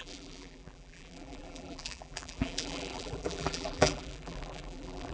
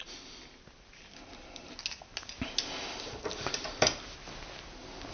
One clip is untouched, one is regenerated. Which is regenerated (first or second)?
first